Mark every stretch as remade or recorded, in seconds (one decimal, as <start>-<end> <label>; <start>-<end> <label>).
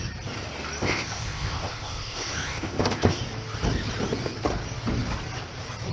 0.0-0.8 recorded; 0.8-3.2 remade; 3.2-5.9 recorded